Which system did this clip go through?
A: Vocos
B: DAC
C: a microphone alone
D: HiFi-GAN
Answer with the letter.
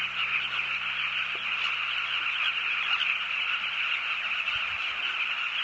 C